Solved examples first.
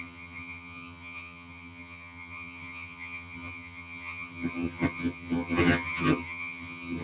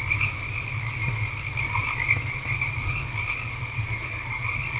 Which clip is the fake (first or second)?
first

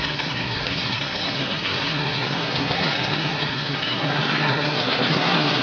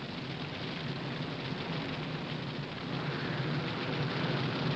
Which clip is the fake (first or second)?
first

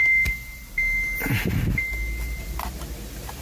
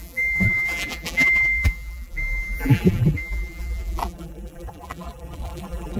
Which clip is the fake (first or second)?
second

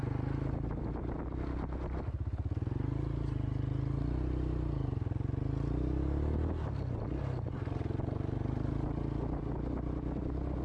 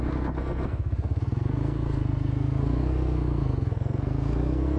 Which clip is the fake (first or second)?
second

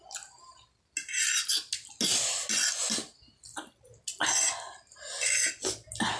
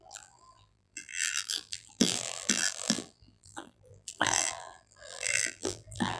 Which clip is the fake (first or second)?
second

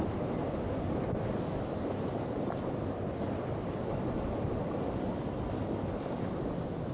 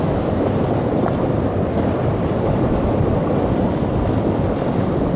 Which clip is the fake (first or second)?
second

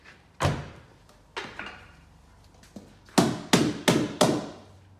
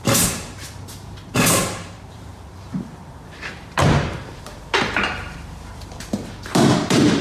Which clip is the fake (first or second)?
second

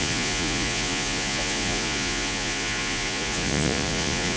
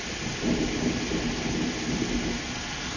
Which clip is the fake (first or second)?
first